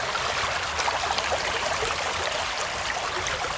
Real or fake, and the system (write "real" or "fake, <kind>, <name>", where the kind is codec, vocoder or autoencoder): real